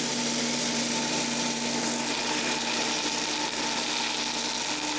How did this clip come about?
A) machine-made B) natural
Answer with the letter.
B